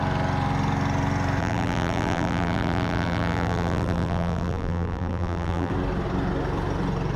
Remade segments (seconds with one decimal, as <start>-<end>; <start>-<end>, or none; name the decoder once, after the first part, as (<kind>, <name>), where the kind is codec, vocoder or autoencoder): 1.4-5.7 (vocoder, BigVGAN v2)